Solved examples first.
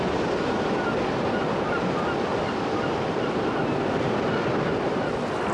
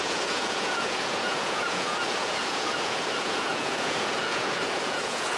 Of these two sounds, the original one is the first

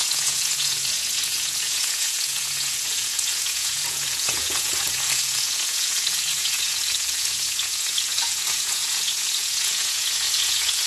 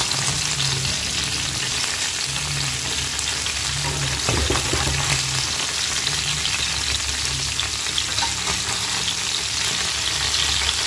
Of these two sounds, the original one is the second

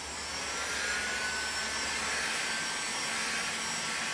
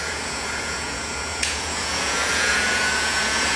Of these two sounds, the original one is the first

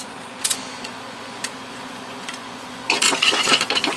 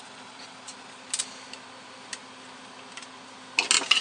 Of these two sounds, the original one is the second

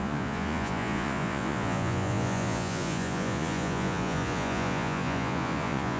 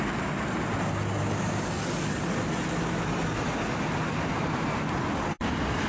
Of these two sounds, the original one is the second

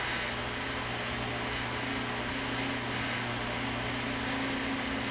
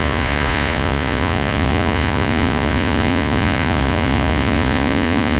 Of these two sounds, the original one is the first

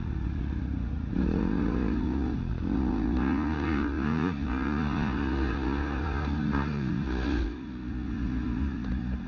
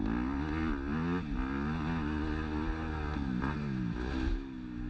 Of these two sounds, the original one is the second